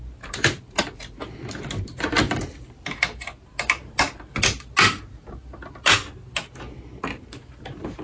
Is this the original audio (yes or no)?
yes